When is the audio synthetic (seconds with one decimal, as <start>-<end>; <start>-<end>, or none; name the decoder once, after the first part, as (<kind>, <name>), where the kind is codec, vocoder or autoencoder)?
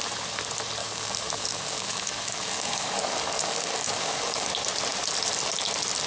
0.8-4.5 (codec, DAC)